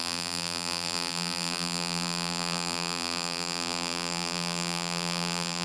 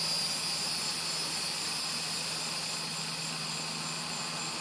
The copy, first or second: first